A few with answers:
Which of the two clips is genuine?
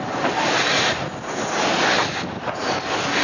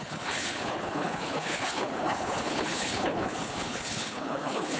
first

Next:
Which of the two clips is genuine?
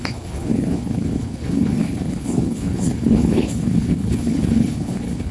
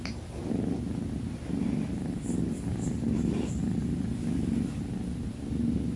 second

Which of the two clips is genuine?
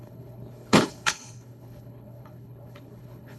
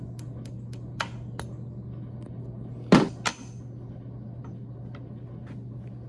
second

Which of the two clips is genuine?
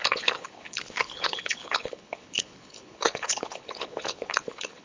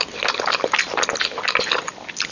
second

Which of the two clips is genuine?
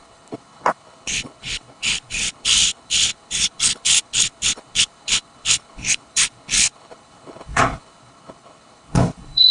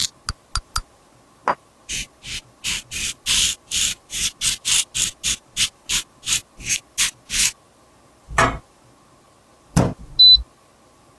second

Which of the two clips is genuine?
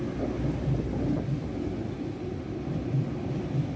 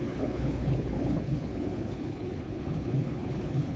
first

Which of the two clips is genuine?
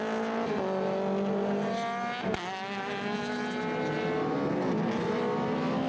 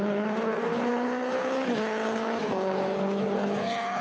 first